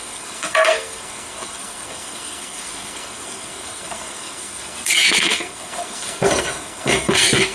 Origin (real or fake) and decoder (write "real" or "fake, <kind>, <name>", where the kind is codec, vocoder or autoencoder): fake, codec, SNAC